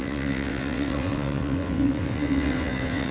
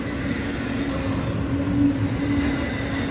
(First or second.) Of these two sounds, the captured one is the second